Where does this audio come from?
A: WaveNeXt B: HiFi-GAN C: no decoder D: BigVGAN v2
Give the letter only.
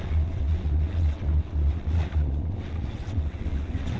A